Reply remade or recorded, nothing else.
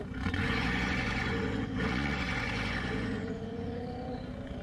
remade